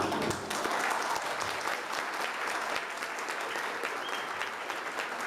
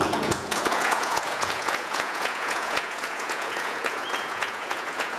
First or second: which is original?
first